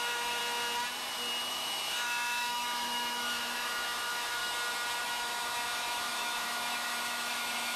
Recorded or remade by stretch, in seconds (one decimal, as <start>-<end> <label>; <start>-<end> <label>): 0.0-0.4 remade; 0.4-1.5 recorded; 1.5-4.4 remade; 4.4-5.0 recorded; 5.0-7.8 remade